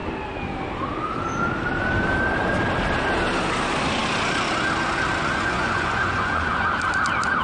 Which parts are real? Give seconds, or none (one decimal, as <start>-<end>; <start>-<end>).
0.0-5.2; 6.6-7.4